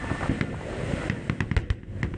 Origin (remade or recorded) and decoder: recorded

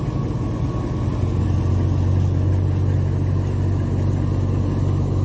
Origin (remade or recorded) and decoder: recorded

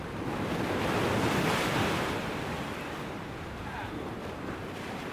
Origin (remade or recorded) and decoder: recorded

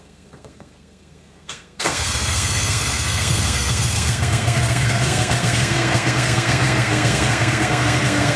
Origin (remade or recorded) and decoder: remade, codec, SNAC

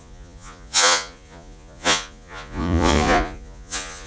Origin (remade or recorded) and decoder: remade, vocoder, Vocos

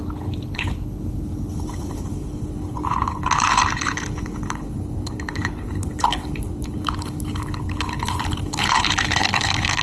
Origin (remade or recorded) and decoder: remade, codec, HILCodec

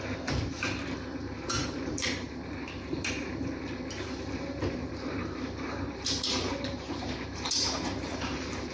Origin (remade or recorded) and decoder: remade, vocoder, BigVGAN v2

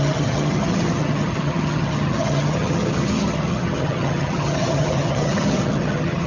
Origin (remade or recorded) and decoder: remade, vocoder, HiFi-GAN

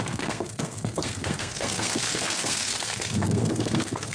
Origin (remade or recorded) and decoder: remade, codec, SNAC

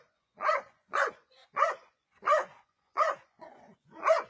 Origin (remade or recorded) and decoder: remade, vocoder, Vocos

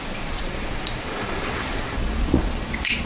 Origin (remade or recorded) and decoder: remade, vocoder, Vocos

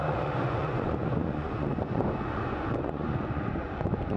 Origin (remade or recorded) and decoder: remade, vocoder, Vocos